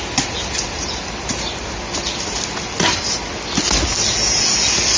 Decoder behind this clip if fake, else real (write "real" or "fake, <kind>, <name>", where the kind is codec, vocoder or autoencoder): real